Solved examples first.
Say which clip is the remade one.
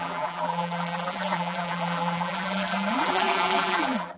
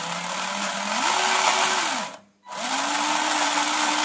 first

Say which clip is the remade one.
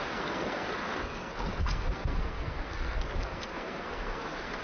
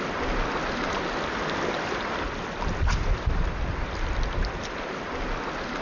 first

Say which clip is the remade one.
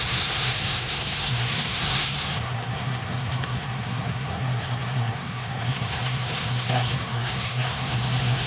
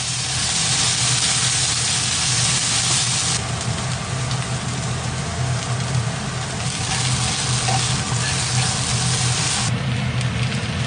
first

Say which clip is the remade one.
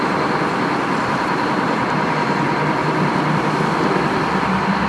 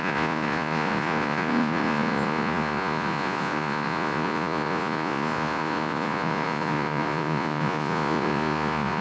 second